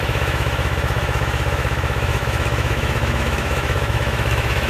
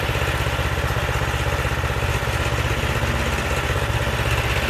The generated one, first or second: first